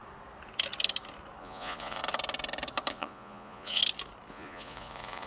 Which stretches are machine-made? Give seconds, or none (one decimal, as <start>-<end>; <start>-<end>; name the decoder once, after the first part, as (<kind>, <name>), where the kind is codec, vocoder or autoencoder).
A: 1.4-2.0 (vocoder, Vocos); 2.9-3.8; 4.3-5.3